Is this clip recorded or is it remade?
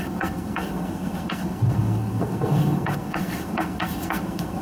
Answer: remade